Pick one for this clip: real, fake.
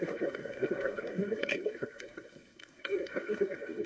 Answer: fake